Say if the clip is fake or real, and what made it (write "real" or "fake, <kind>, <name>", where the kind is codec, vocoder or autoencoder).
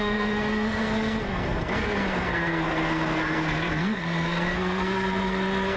fake, codec, SNAC